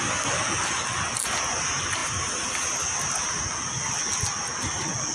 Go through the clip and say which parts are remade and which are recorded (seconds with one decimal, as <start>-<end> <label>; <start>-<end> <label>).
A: 0.0-2.0 recorded; 2.0-3.4 remade; 3.4-5.1 recorded